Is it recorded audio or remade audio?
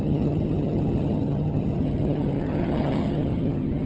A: remade